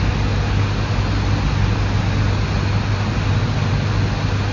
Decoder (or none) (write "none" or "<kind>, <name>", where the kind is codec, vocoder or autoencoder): none